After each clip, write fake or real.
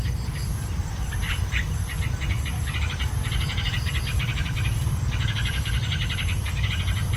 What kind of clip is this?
fake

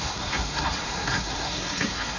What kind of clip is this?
fake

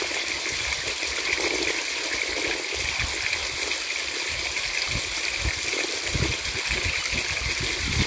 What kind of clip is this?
real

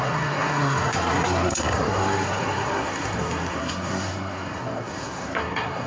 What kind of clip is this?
fake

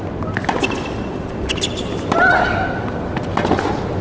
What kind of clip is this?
real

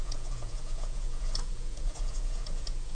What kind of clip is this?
fake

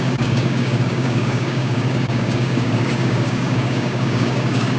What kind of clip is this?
fake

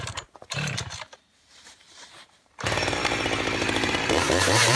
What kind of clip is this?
fake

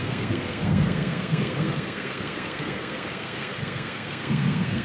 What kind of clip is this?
fake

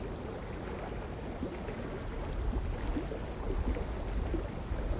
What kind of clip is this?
real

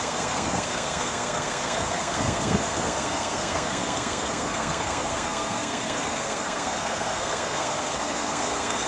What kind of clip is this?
fake